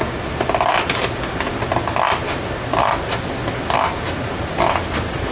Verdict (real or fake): real